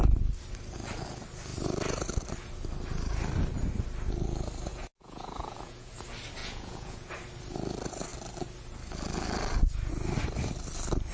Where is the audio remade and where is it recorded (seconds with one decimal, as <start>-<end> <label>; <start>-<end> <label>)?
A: 0.0-4.7 recorded; 4.7-5.9 remade; 5.9-6.4 recorded; 6.4-7.1 remade; 7.1-11.1 recorded